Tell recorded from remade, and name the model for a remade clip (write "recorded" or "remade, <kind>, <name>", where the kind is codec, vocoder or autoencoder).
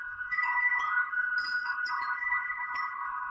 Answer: remade, codec, HILCodec